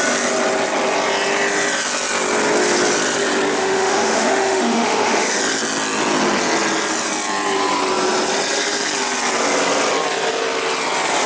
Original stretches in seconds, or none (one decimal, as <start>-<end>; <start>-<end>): 0.0-3.6; 5.4-11.3